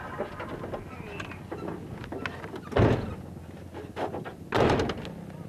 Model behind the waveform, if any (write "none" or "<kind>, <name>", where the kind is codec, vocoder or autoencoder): none